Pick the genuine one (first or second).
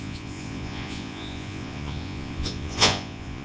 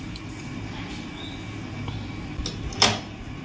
second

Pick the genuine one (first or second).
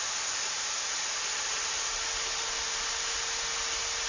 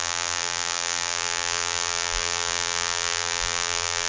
first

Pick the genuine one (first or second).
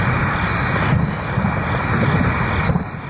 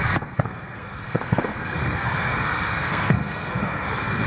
first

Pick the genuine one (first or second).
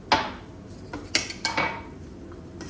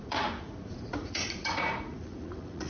first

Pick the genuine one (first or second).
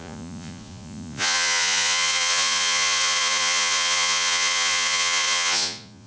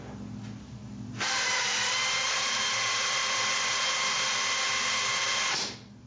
second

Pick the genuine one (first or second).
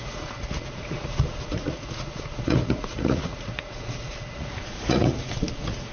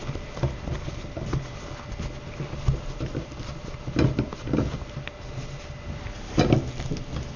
second